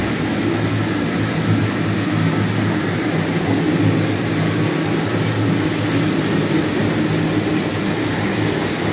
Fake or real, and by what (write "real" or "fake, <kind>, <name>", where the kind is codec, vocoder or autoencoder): real